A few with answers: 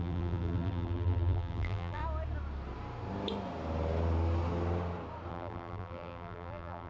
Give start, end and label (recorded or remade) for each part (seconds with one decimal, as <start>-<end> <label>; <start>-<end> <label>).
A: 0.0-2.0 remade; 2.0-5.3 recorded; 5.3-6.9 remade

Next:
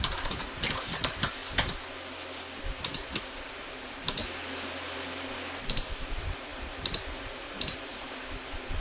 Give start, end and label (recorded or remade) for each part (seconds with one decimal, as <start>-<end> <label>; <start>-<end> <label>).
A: 0.0-1.4 remade; 1.4-2.6 recorded; 2.6-4.2 remade; 4.2-5.6 recorded; 5.6-8.8 remade

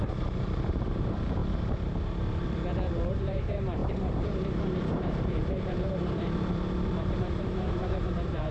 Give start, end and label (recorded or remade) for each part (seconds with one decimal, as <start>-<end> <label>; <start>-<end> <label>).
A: 0.0-1.4 remade; 1.4-3.1 recorded; 3.1-8.5 remade

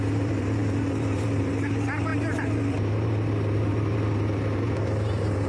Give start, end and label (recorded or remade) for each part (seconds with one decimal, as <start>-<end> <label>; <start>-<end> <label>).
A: 0.0-5.5 remade